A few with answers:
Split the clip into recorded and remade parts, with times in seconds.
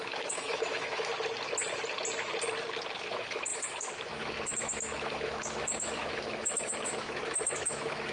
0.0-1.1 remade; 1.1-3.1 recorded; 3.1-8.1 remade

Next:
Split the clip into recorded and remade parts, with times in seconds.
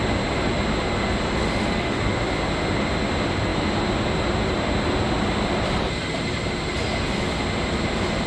0.0-1.4 recorded; 1.4-2.0 remade; 2.0-8.3 recorded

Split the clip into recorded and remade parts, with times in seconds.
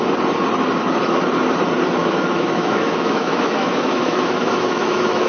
0.0-2.0 recorded; 2.0-5.3 remade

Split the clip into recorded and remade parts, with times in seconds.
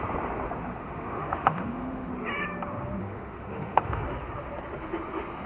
0.0-0.8 recorded; 0.8-2.1 remade; 2.1-3.0 recorded; 3.0-4.0 remade; 4.0-5.5 recorded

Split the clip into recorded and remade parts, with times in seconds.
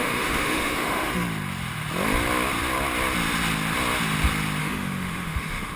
0.0-1.1 remade; 1.1-4.6 recorded; 4.6-5.8 remade